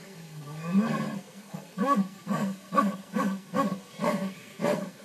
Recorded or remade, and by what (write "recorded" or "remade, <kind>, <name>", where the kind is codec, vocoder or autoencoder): remade, codec, SNAC